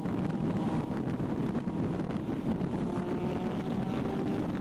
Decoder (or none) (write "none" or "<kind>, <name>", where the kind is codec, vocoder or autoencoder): none